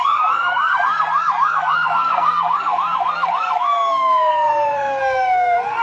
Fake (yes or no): yes